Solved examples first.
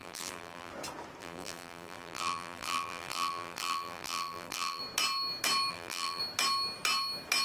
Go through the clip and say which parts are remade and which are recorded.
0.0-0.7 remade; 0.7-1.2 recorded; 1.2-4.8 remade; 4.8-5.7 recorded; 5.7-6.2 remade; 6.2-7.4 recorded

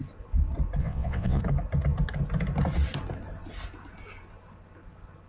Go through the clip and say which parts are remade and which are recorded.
0.0-0.8 recorded; 0.8-1.4 remade; 1.4-5.3 recorded

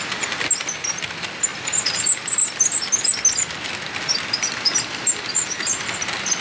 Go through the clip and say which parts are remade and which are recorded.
0.0-6.4 recorded

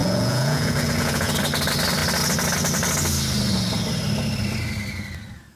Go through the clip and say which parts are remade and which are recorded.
0.0-1.3 remade; 1.3-5.6 recorded

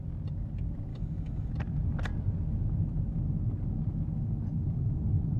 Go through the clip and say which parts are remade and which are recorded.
0.0-0.9 recorded; 0.9-1.5 remade; 1.5-5.4 recorded

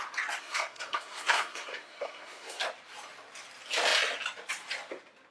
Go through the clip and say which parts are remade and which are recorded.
0.0-0.4 recorded; 0.4-2.6 remade; 2.6-5.3 recorded

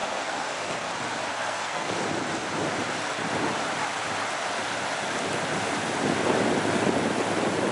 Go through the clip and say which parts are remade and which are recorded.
0.0-0.9 remade; 0.9-1.3 recorded; 1.3-1.9 remade; 1.9-7.7 recorded

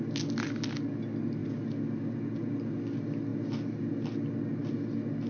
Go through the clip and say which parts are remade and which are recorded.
0.0-5.3 recorded